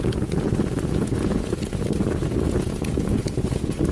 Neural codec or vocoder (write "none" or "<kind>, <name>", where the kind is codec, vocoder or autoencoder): vocoder, Vocos